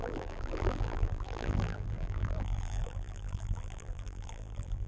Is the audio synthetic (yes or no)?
yes